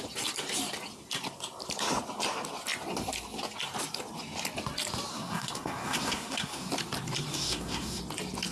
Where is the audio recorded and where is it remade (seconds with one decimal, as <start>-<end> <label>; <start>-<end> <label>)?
0.0-5.1 recorded; 5.1-6.7 remade; 6.7-7.3 recorded; 7.3-8.0 remade; 8.0-8.5 recorded